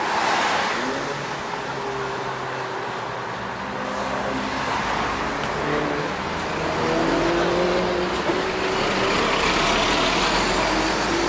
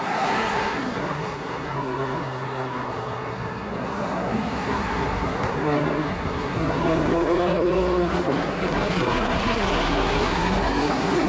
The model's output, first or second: second